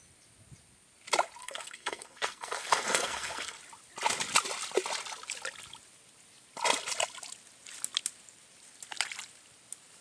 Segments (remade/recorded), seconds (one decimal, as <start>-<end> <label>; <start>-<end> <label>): 0.0-1.4 recorded; 1.4-3.6 remade; 3.6-10.0 recorded

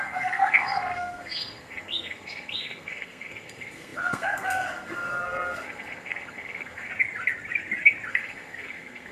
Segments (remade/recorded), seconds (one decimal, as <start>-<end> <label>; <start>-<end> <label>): 0.0-6.9 remade; 6.9-8.1 recorded; 8.1-9.1 remade

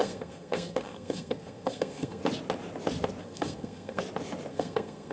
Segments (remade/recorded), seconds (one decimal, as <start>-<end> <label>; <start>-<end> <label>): 0.0-2.2 remade; 2.2-3.2 recorded; 3.2-4.0 remade; 4.0-4.5 recorded; 4.5-5.1 remade

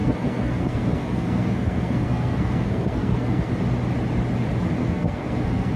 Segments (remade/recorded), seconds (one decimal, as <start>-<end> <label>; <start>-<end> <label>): 0.0-3.5 remade; 3.5-4.8 recorded; 4.8-5.8 remade

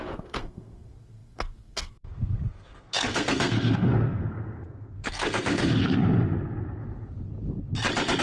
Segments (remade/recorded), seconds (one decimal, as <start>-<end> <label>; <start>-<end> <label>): 0.0-5.8 remade; 5.8-8.2 recorded